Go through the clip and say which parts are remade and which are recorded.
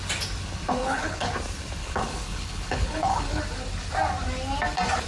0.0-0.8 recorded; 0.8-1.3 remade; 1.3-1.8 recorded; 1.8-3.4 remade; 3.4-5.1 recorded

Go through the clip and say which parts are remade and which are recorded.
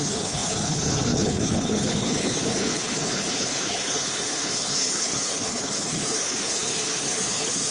0.0-7.7 remade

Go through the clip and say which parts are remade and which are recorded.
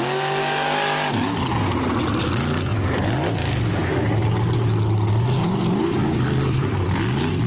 0.0-7.5 recorded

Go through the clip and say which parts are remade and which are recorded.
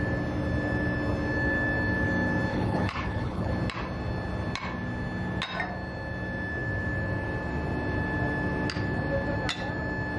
0.0-2.5 recorded; 2.5-3.5 remade; 3.5-10.2 recorded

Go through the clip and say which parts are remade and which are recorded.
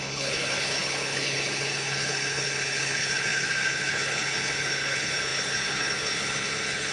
0.0-6.9 remade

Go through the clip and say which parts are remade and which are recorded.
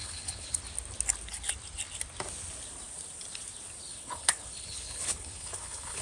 0.0-0.6 remade; 0.6-3.9 recorded; 3.9-6.0 remade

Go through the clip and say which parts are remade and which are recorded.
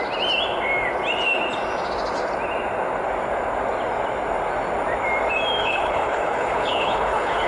0.0-5.6 recorded; 5.6-7.5 remade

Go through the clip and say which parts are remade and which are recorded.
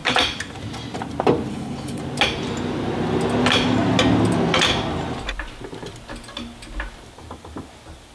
0.0-1.5 recorded; 1.5-2.0 remade; 2.0-8.1 recorded